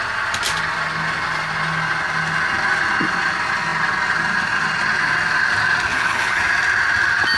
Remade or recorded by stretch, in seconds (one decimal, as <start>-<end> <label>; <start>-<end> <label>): 0.0-5.9 recorded; 5.9-6.4 remade; 6.4-7.4 recorded